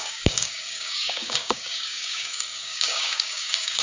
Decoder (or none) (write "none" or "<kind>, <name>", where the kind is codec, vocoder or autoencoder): codec, DAC